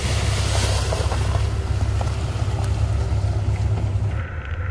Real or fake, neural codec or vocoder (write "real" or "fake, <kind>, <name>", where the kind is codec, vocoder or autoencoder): real